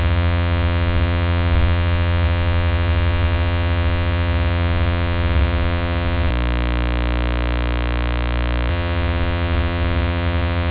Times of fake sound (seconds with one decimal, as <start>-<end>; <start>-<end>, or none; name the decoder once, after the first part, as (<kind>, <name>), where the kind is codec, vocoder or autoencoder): 0.0-6.3 (vocoder, WaveNeXt); 8.7-10.7